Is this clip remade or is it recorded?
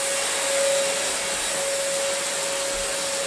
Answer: recorded